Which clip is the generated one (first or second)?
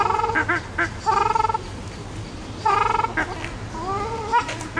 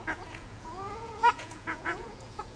second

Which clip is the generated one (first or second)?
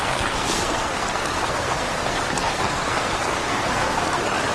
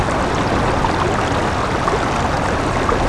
first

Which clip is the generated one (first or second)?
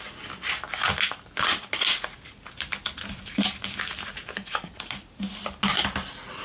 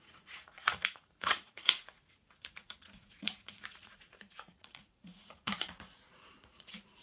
second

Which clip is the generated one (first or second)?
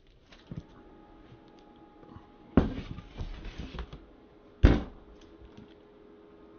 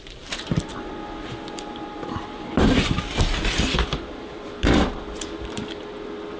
second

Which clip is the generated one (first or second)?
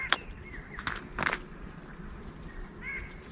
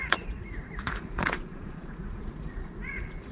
second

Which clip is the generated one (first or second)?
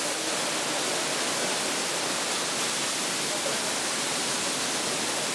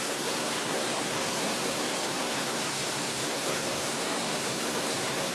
second